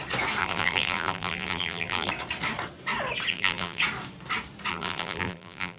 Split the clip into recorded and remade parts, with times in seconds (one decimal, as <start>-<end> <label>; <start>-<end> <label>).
0.0-0.4 recorded; 0.4-2.1 remade; 2.1-3.3 recorded; 3.3-3.8 remade; 3.8-4.7 recorded; 4.7-5.8 remade

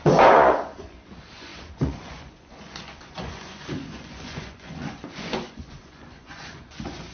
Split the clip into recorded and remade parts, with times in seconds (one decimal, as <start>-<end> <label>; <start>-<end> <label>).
0.0-7.1 remade

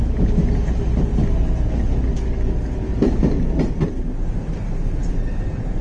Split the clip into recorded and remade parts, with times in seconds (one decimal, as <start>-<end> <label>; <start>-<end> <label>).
0.0-5.0 recorded; 5.0-5.8 remade

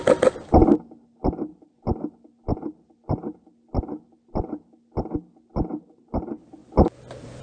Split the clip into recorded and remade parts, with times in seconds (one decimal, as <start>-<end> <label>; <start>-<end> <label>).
0.0-7.4 recorded

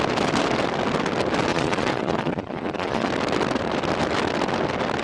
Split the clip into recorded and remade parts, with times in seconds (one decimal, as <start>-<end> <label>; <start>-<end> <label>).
0.0-1.5 recorded; 1.5-3.1 remade; 3.1-5.0 recorded

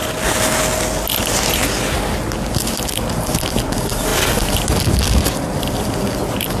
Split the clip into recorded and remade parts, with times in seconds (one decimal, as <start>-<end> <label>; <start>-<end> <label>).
0.0-3.0 recorded; 3.0-4.1 remade; 4.1-5.4 recorded; 5.4-6.6 remade

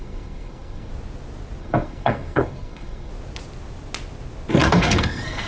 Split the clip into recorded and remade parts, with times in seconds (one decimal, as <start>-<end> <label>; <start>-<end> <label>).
0.0-0.9 remade; 0.9-1.6 recorded; 1.6-3.1 remade; 3.1-4.5 recorded; 4.5-5.5 remade